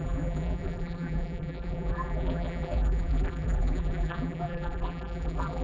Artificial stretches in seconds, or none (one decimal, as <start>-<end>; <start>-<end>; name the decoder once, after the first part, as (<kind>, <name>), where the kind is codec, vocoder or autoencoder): 0.0-5.6 (vocoder, BigVGAN v2)